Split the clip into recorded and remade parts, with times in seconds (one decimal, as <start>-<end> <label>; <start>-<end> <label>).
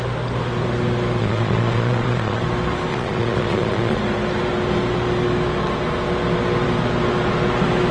0.0-1.2 recorded; 1.2-2.4 remade; 2.4-2.9 recorded; 2.9-4.0 remade; 4.0-7.9 recorded